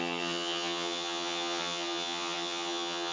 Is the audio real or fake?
fake